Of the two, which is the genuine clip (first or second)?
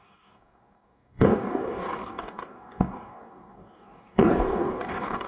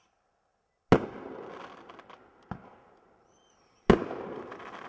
second